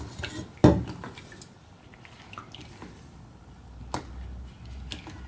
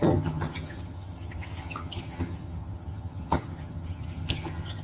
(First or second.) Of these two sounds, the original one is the first